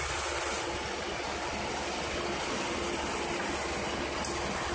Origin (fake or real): real